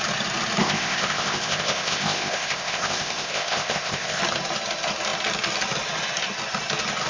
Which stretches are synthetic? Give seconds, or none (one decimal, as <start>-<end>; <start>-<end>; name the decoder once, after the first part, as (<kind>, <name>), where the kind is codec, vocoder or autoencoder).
0.6-4.2 (codec, ZipCodec)